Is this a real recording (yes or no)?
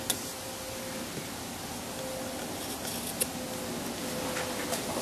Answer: yes